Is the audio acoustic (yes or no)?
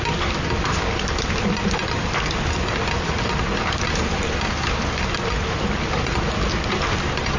yes